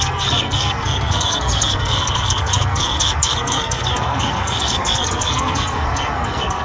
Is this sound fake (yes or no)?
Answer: yes